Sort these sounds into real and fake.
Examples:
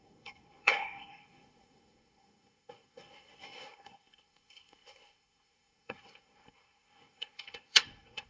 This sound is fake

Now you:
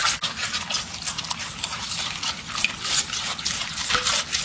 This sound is real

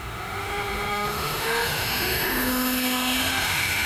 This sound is fake